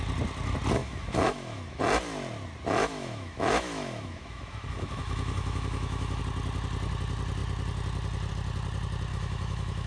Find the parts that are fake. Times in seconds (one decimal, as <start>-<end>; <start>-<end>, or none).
0.8-1.8; 2.8-6.2; 9.1-9.9